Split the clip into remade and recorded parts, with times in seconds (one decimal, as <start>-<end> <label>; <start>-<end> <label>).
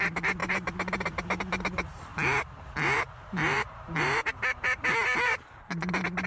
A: 0.0-0.4 recorded; 0.4-1.4 remade; 1.4-2.1 recorded; 2.1-5.5 remade; 5.5-6.3 recorded